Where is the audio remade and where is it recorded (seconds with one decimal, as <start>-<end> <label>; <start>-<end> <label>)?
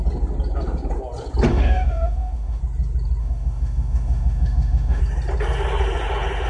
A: 0.0-1.5 recorded; 1.5-2.6 remade; 2.6-3.2 recorded; 3.2-5.0 remade; 5.0-6.5 recorded